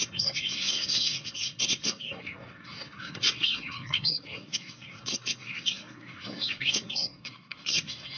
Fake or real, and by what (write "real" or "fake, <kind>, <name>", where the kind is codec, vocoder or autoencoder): fake, codec, SNAC